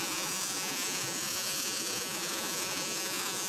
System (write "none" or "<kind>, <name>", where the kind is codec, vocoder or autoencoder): vocoder, Vocos